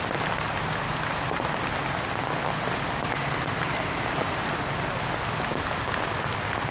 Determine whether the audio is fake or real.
real